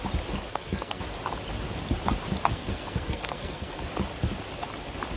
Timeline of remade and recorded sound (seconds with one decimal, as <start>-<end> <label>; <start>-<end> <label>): 0.0-0.5 recorded; 0.5-1.0 remade; 1.0-2.5 recorded; 2.5-3.9 remade; 3.9-5.2 recorded